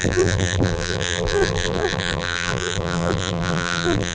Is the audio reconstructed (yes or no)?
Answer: yes